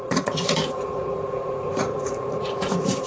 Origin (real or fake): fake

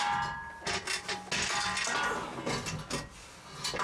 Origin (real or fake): real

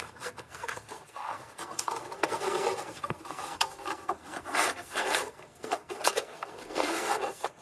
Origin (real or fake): fake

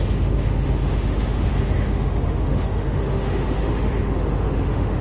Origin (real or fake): fake